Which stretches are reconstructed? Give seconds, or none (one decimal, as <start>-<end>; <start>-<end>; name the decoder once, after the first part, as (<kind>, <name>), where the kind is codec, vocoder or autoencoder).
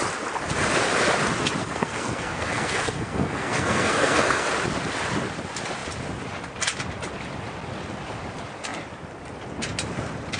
1.6-4.5 (codec, SNAC)